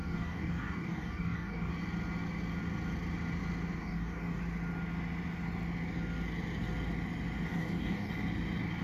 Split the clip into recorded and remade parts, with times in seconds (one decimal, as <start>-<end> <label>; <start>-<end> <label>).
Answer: 0.0-1.7 remade; 1.7-3.8 recorded; 3.8-4.4 remade; 4.4-7.5 recorded; 7.5-8.1 remade; 8.1-8.8 recorded